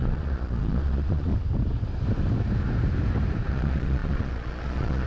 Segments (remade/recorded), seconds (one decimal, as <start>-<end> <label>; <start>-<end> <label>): 0.0-1.3 remade; 1.3-3.5 recorded; 3.5-5.1 remade